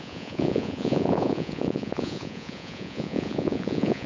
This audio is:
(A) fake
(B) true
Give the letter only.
A